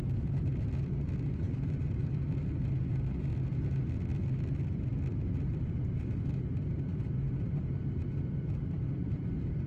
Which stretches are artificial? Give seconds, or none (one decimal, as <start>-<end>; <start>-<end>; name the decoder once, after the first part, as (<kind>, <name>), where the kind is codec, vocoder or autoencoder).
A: 0.0-0.5 (vocoder, BigVGAN v2); 1.4-2.3; 2.9-3.3; 5.5-9.7